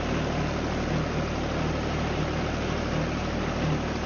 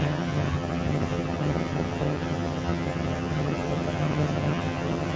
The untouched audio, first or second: first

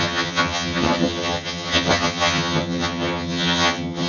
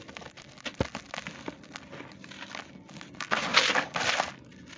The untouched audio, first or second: second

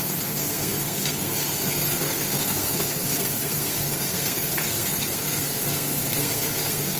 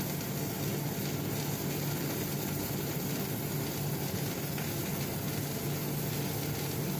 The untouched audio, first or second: second